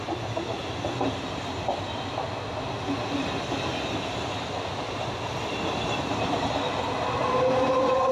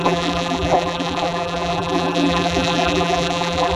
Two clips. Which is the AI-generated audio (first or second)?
second